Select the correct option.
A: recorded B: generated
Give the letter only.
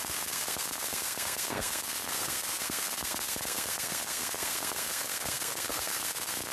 B